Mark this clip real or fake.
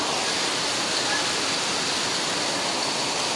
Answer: real